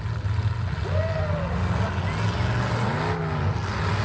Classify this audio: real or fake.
real